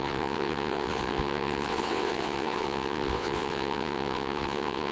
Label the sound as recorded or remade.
remade